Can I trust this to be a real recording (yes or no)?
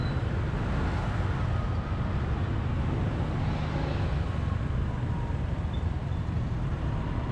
yes